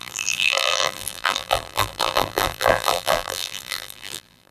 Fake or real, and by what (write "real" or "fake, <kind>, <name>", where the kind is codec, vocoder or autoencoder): fake, vocoder, BigVGAN v2